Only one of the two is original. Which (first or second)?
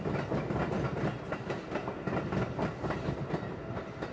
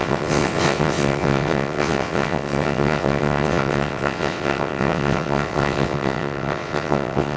first